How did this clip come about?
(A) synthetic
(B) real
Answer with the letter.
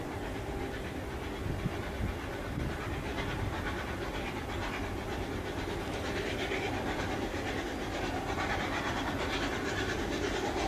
B